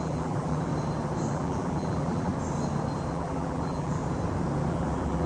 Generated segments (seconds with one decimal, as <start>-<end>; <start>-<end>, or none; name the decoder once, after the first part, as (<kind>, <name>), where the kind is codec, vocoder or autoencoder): 0.0-0.7 (vocoder, BigVGAN v2); 1.3-2.3; 3.1-4.0; 4.7-5.3